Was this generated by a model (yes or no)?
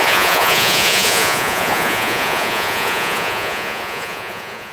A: yes